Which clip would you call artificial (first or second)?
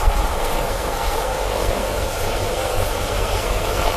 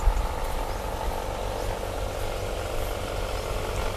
first